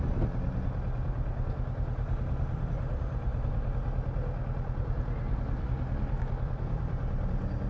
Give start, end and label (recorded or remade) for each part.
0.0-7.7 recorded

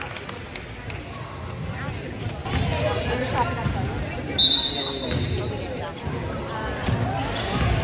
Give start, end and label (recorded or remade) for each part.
0.0-7.8 recorded

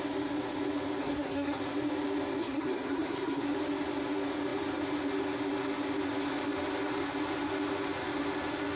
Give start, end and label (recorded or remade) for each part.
0.0-1.0 recorded; 1.0-1.6 remade; 1.6-2.4 recorded; 2.4-3.4 remade; 3.4-8.8 recorded

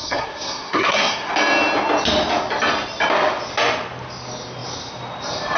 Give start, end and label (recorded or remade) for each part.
0.0-1.3 remade; 1.3-5.6 recorded